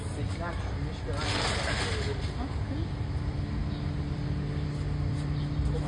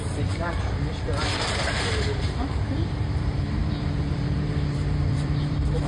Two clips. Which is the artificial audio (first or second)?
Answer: second